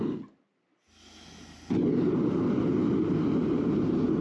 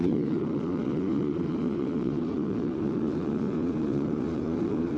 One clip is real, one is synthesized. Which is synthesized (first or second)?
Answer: second